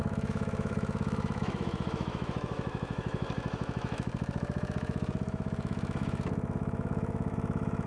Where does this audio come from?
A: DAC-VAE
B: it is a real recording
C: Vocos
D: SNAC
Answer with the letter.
A